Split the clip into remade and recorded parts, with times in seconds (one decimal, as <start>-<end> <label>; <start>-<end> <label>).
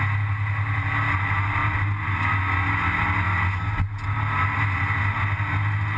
0.0-6.0 recorded